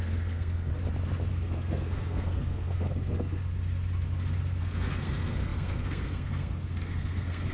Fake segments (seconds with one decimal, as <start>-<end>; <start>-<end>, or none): 0.0-0.7; 1.3-3.4; 4.6-7.5